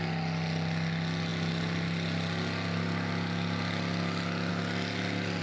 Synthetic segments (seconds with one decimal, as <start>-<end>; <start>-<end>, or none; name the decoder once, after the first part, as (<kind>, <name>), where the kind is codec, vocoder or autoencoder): none